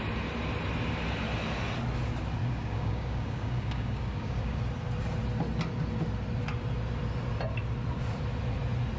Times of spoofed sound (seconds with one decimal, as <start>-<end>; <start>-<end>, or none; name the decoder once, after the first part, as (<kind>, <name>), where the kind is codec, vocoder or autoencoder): 2.4-4.6 (codec, DAC)